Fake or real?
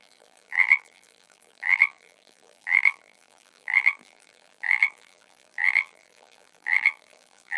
fake